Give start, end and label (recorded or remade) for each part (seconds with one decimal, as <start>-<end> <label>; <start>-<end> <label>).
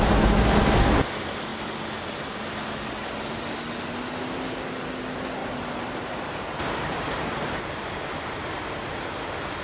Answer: 0.0-5.4 recorded; 5.4-9.1 remade; 9.1-9.6 recorded